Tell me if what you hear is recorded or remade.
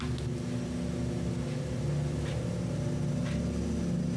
recorded